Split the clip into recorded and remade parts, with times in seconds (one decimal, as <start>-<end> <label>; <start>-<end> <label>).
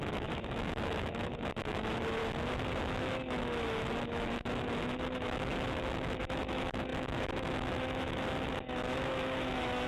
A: 0.0-2.2 remade; 2.2-2.8 recorded; 2.8-9.9 remade